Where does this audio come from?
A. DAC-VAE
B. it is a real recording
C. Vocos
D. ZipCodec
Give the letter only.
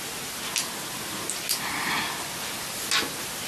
B